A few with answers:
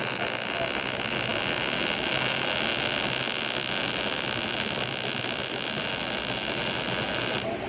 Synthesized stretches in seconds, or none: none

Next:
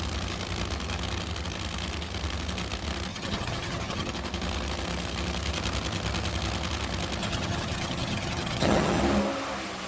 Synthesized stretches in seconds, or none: 3.1-4.1 (vocoder, HiFi-GAN); 7.2-9.0

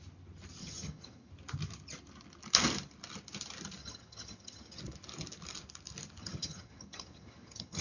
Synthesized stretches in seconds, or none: 0.6-1.3 (vocoder, HiFi-GAN); 3.8-4.8; 6.2-7.8

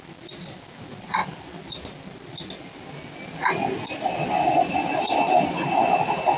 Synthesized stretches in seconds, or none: none